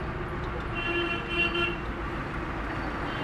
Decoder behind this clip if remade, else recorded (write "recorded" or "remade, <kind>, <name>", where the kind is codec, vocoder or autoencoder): recorded